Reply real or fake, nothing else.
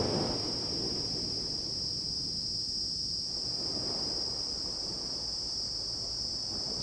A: real